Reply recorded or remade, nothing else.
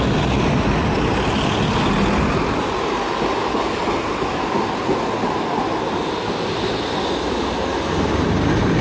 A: recorded